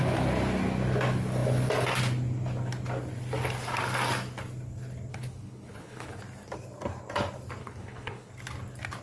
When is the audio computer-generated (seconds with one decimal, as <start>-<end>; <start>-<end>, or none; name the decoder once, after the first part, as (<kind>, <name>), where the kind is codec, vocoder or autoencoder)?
5.1-6.2 (codec, HILCodec); 7.6-8.3